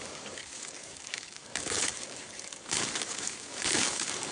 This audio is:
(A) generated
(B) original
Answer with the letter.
A